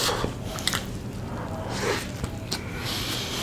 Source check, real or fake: real